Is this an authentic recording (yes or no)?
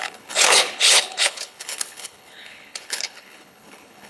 no